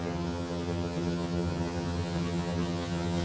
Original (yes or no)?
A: no